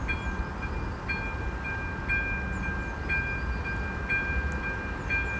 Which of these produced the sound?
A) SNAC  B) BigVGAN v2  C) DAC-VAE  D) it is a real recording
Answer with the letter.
D